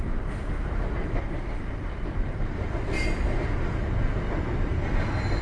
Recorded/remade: recorded